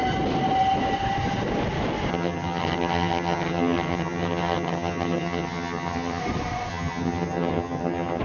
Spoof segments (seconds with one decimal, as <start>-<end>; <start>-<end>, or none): 2.1-6.2; 6.7-8.2